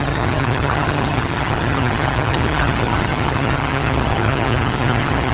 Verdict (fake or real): fake